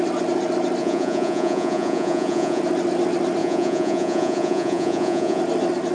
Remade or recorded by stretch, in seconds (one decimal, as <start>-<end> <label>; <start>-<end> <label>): 0.0-0.8 recorded; 0.8-2.6 remade; 2.6-3.4 recorded; 3.4-5.4 remade; 5.4-5.9 recorded